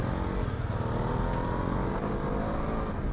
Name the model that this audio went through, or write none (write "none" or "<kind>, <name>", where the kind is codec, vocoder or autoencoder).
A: none